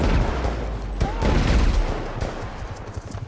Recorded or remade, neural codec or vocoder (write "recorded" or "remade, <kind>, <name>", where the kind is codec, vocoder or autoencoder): recorded